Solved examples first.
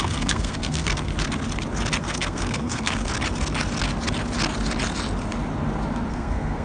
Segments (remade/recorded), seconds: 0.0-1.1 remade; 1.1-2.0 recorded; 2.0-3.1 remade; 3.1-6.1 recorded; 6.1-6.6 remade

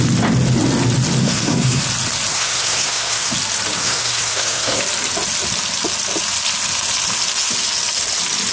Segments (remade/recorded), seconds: 0.0-1.2 recorded; 1.2-1.8 remade; 1.8-2.3 recorded; 2.3-3.3 remade; 3.3-3.8 recorded; 3.8-4.8 remade; 4.8-8.5 recorded